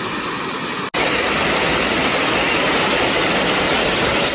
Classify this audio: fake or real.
real